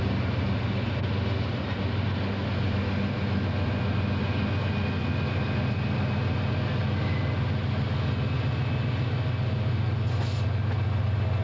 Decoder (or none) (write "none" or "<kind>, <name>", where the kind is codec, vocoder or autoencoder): none